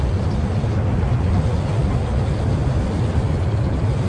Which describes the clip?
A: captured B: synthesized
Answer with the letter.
A